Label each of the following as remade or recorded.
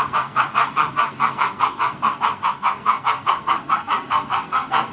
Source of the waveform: remade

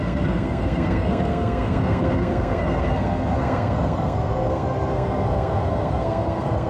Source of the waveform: remade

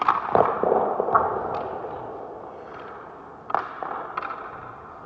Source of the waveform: recorded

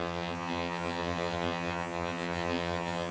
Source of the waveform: remade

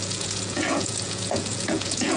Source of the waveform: remade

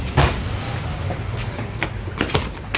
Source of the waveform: recorded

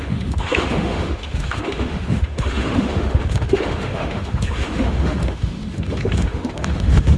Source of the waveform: remade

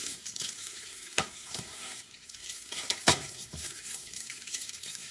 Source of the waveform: remade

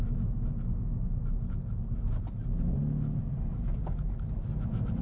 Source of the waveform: recorded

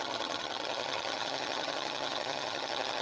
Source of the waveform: remade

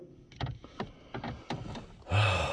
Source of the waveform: recorded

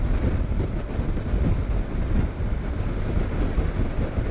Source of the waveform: recorded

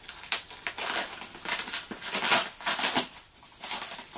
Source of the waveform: recorded